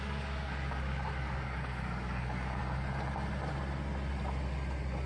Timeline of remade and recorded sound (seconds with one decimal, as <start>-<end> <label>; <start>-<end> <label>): 0.0-2.6 remade; 2.6-5.1 recorded